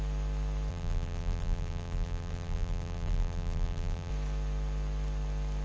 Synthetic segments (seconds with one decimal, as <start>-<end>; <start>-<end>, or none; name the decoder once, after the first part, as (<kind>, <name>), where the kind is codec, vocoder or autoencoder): 0.7-4.1 (vocoder, BigVGAN v2)